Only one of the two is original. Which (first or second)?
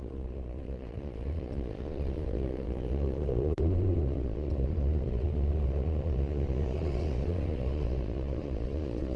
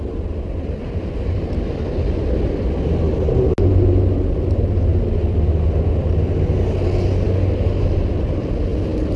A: second